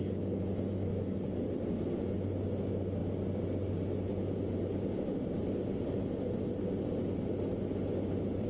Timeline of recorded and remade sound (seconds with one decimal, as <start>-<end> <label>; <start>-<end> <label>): 0.0-0.7 recorded; 0.7-1.4 remade; 1.4-8.5 recorded